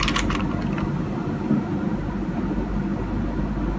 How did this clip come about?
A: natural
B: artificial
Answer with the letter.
A